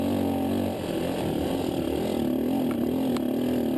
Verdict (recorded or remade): recorded